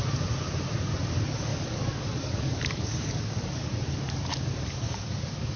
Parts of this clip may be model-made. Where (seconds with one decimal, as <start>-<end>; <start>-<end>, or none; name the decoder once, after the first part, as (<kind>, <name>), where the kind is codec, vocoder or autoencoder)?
1.5-3.7 (codec, DAC); 4.3-5.6